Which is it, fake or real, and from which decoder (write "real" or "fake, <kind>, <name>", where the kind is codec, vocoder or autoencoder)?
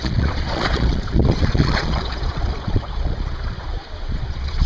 fake, vocoder, Vocos